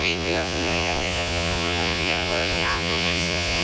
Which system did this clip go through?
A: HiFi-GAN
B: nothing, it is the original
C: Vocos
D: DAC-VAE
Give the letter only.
C